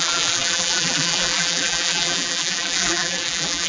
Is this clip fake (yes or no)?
yes